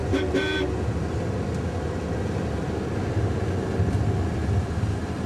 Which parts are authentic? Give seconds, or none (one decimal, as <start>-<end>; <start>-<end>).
0.0-5.3